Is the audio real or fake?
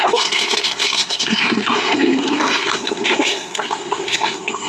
fake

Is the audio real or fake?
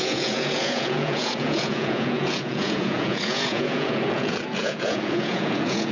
fake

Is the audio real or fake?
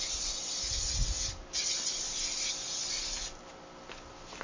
real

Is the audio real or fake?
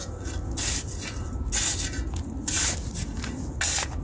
real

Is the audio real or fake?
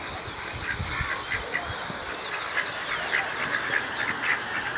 real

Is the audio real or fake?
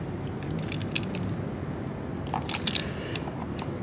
real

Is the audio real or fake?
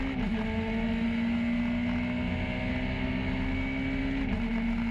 real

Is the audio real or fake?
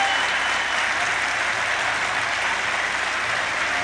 real